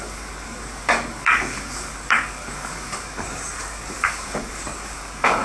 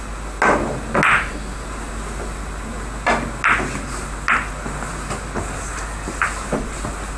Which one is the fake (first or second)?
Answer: first